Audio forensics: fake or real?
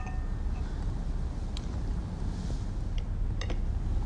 real